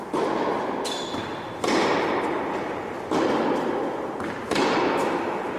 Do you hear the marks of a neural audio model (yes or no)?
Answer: no